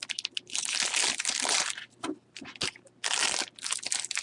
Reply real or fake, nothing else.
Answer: real